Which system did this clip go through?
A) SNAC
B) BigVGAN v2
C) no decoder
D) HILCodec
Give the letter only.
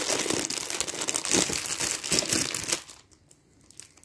C